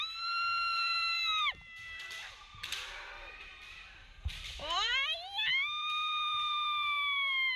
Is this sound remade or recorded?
remade